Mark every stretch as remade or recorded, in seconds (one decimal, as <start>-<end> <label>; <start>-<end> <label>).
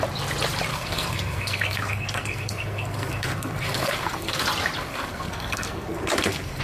0.0-0.7 recorded; 0.7-4.4 remade; 4.4-4.9 recorded; 4.9-6.6 remade